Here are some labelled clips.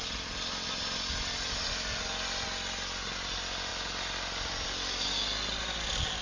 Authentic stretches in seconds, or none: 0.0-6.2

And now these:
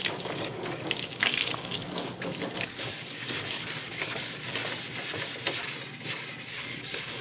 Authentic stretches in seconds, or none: 4.6-6.5

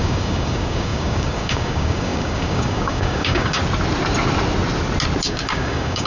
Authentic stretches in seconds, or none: 3.6-5.2